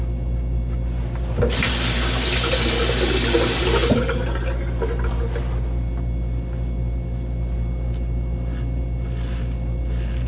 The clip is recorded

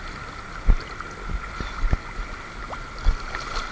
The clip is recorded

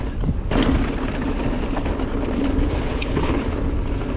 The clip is recorded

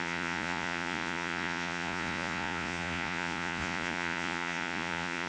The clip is remade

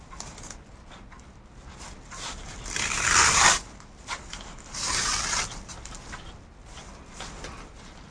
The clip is recorded